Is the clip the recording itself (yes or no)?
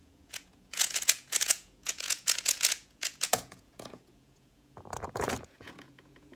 no